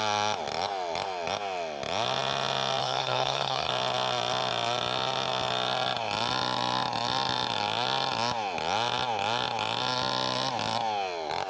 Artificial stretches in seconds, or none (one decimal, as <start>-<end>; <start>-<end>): 2.8-3.7